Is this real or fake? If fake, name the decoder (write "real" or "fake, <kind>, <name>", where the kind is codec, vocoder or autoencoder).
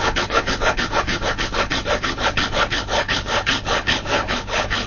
fake, codec, HILCodec